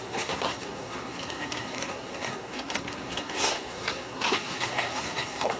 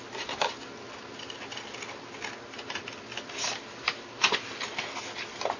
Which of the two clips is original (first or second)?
second